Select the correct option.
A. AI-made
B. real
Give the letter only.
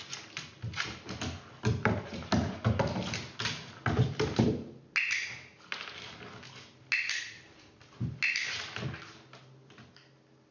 B